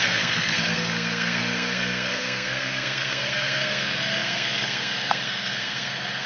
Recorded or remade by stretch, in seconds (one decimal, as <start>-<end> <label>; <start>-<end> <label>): 0.0-6.3 remade

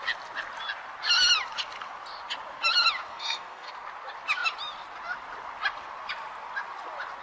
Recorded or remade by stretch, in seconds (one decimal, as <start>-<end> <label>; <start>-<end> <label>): 0.0-3.1 recorded; 3.1-3.7 remade; 3.7-7.2 recorded

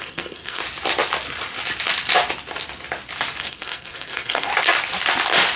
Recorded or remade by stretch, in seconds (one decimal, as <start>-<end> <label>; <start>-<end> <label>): 0.0-0.6 remade; 0.6-3.4 recorded; 3.4-4.5 remade; 4.5-5.6 recorded